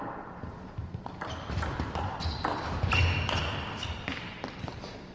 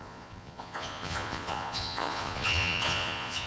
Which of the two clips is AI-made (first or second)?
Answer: second